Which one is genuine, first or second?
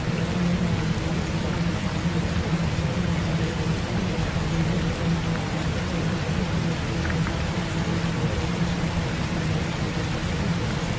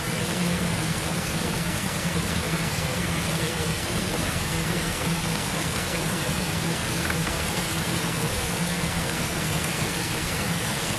first